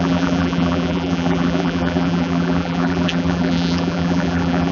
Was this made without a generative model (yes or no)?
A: no